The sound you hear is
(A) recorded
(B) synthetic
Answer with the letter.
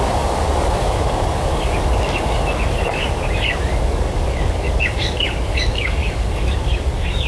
B